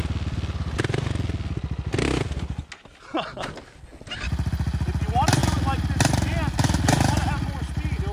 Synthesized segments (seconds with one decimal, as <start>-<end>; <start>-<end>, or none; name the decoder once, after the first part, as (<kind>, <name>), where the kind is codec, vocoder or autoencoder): none